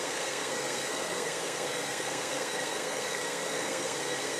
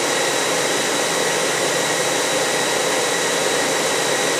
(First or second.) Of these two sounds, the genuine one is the second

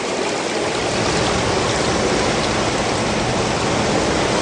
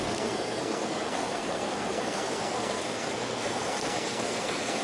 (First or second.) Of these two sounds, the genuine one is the first